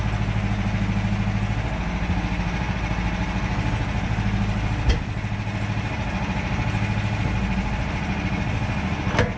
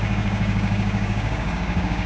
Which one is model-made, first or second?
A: second